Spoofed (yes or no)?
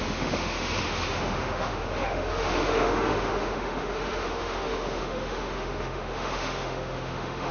yes